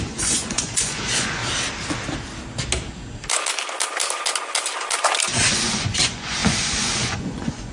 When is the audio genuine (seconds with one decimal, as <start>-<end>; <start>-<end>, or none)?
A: 1.4-5.2